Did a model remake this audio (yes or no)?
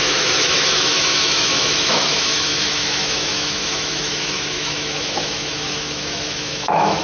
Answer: yes